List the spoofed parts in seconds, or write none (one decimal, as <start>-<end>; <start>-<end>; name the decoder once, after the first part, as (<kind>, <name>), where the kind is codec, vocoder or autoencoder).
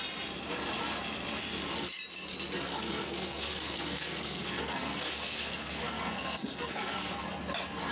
2.7-7.4 (codec, SNAC)